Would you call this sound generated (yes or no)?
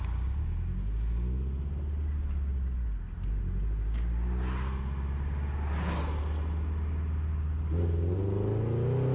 no